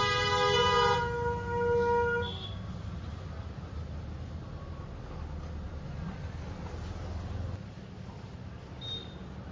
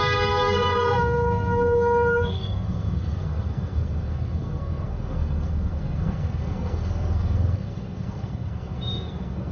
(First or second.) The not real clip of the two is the second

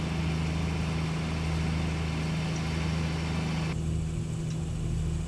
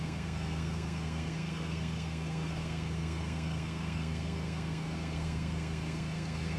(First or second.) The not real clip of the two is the second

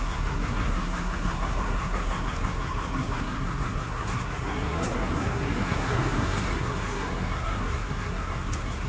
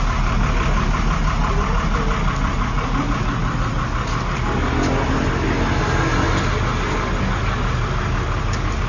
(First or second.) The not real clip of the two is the first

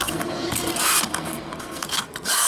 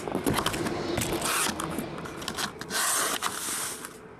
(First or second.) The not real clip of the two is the first